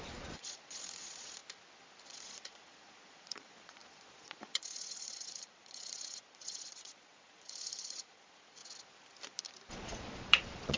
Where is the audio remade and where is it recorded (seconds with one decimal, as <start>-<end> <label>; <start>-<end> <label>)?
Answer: 0.0-1.4 remade; 1.4-2.0 recorded; 2.0-8.6 remade; 8.6-9.7 recorded; 9.7-10.8 remade